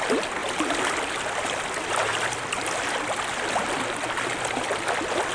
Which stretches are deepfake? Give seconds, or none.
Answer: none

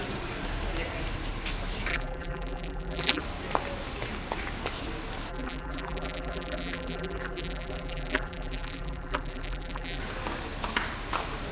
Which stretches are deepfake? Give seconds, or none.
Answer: 1.9-3.2 (vocoder, BigVGAN v2); 5.3-10.0

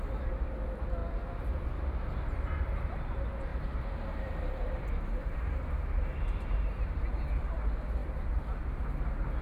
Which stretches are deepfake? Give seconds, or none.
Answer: 1.0-3.0 (vocoder, BigVGAN v2); 3.5-7.0

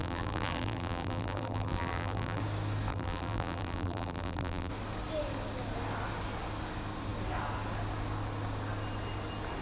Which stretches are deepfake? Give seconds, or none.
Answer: 0.0-2.4 (vocoder, BigVGAN v2); 2.9-4.7

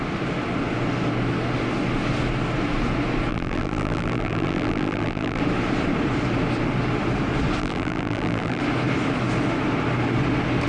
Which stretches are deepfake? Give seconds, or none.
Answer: 3.3-5.4 (vocoder, BigVGAN v2); 7.6-8.6